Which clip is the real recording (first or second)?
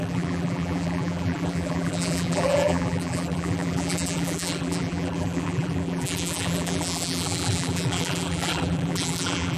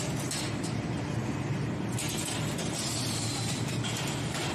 second